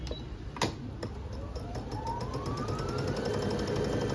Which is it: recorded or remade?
recorded